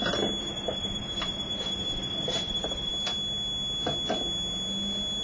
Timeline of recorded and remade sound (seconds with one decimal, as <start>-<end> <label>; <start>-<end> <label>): 0.0-0.4 recorded; 0.4-2.9 remade; 2.9-5.2 recorded